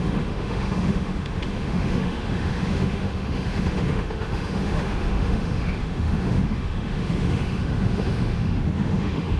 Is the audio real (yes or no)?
no